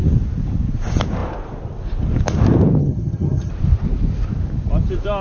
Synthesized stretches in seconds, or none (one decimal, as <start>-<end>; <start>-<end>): 2.8-3.5